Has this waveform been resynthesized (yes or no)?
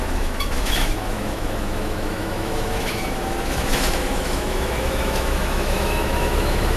yes